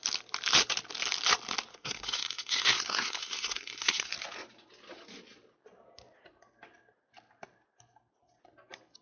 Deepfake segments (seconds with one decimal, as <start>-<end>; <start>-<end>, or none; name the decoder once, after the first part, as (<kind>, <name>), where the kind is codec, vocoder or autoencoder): 1.7-4.1 (codec, SNAC)